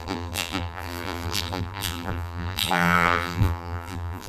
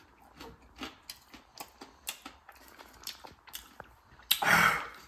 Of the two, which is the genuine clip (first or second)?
second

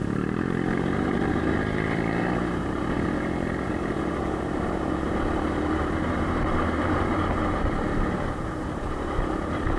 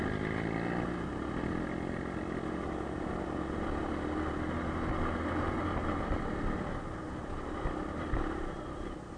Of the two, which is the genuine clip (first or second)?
second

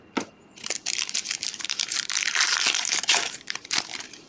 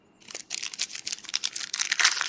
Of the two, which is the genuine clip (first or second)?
second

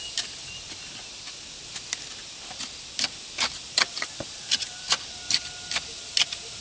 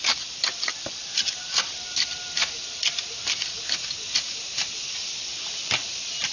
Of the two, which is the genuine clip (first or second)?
first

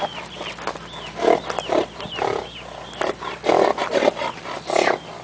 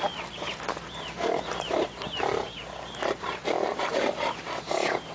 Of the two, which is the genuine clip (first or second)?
first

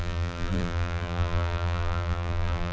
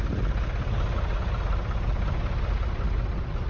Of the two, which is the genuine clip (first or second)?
second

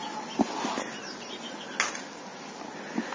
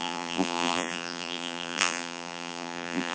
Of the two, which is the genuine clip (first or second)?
first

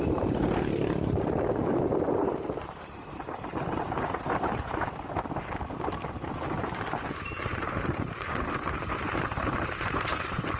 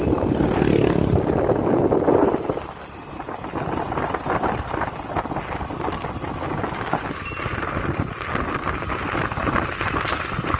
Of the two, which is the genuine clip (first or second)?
second